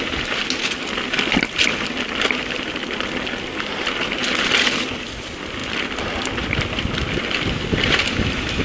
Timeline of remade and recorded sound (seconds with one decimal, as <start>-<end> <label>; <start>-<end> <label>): 0.0-5.6 recorded; 5.6-8.6 remade